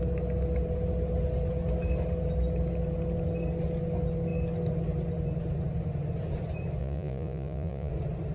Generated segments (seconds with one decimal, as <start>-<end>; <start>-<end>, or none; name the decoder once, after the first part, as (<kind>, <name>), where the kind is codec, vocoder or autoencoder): 6.8-7.9 (vocoder, Vocos)